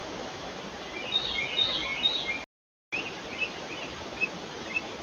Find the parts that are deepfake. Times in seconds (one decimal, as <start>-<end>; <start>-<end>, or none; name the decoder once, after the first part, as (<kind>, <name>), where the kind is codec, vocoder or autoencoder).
0.0-0.6 (autoencoder, DAC-VAE)